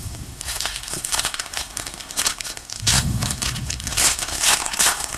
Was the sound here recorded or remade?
remade